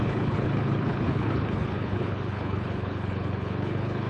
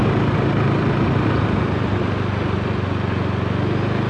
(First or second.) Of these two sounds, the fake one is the first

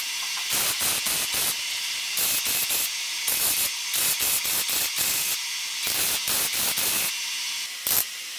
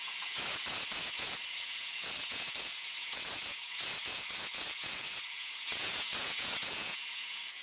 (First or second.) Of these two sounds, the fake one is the second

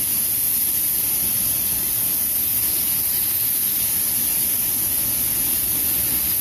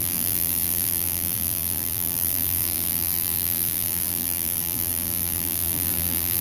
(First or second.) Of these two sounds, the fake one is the second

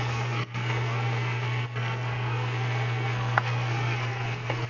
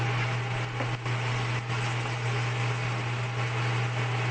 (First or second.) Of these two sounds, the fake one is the first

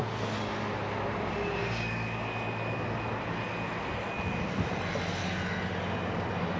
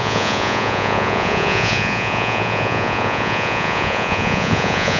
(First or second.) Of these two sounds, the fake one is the second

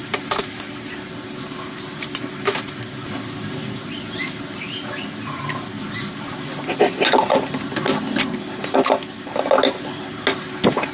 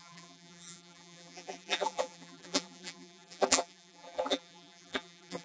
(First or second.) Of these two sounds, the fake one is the second